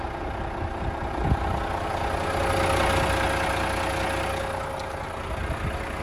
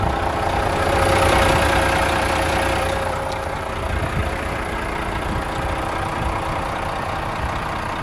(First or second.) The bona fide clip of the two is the first